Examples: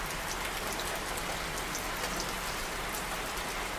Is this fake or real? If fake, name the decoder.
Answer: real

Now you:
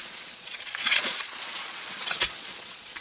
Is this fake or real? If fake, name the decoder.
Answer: fake, vocoder, Vocos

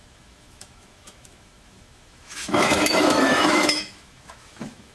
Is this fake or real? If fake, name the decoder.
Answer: fake, autoencoder, DAC-VAE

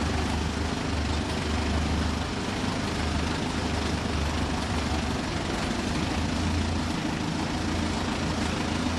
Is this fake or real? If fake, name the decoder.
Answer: real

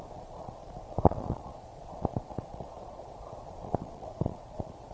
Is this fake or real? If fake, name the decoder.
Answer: fake, vocoder, Vocos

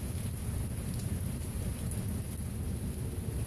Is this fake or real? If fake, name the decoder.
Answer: real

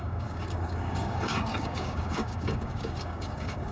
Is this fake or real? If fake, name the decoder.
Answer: fake, codec, DAC